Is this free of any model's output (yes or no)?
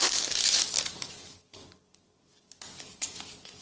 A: yes